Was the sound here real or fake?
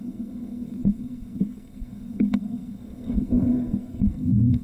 fake